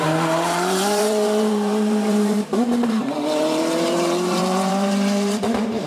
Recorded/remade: remade